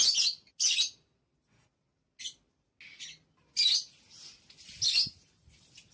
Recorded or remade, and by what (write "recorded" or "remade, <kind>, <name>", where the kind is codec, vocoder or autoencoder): recorded